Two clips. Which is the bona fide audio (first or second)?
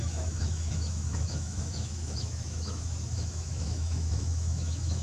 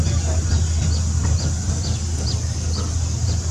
second